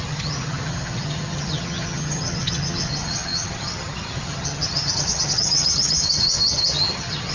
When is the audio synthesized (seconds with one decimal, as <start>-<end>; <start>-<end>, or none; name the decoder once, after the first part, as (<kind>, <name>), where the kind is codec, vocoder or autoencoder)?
0.0-7.3 (vocoder, HiFi-GAN)